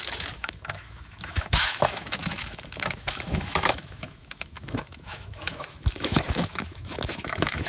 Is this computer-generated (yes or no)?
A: yes